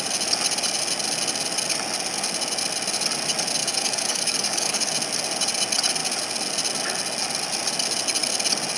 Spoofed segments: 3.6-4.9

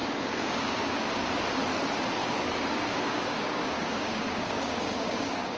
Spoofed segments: 0.0-1.3; 2.2-5.6

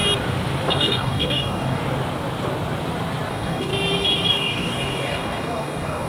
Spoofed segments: 0.7-1.8; 3.3-3.7; 4.3-6.1

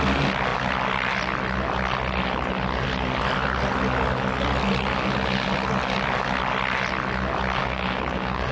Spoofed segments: 7.6-8.5

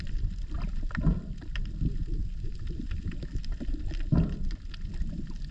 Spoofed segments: none

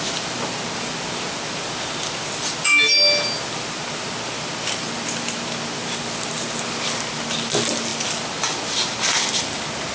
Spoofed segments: none